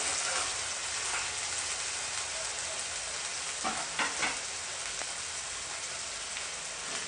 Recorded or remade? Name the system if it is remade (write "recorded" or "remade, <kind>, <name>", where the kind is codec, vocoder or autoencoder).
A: recorded